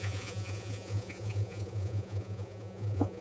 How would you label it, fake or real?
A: fake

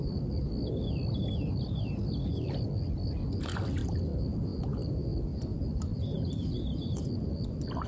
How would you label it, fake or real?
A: real